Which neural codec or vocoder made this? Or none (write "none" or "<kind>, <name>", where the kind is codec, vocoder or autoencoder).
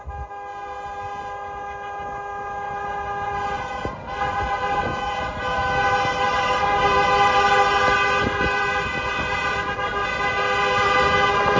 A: none